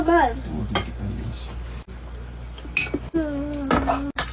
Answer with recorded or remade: recorded